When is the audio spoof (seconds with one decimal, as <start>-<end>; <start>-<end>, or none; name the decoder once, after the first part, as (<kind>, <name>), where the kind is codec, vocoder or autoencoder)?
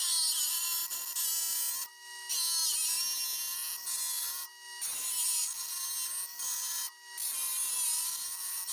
none